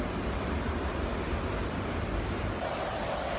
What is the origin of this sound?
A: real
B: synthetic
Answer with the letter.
A